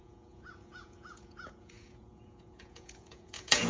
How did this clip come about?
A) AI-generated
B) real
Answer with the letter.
A